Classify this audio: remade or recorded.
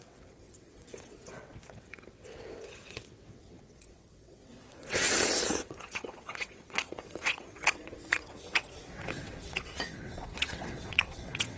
remade